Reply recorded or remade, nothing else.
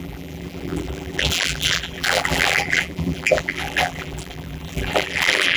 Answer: remade